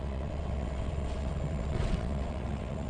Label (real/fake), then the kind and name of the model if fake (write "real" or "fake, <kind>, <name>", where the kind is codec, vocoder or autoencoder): fake, vocoder, WaveNeXt